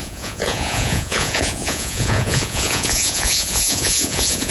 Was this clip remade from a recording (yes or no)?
yes